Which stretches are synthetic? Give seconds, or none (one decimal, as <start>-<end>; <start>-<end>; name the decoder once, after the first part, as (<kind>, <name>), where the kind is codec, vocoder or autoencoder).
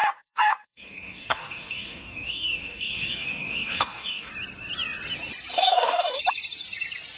0.0-4.3 (codec, DAC); 5.5-6.2